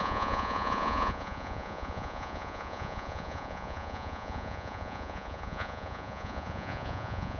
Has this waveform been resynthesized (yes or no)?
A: yes